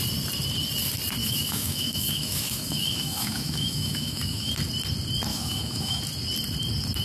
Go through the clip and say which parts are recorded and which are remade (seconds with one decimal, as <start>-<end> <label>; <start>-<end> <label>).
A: 0.0-1.2 recorded; 1.2-4.5 remade; 4.5-5.3 recorded; 5.3-6.0 remade; 6.0-7.0 recorded